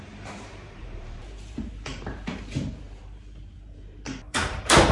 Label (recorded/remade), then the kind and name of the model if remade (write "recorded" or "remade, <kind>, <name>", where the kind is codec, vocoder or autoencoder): remade, vocoder, BigVGAN v2